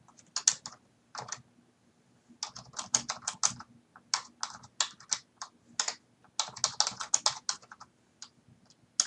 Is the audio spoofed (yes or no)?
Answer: no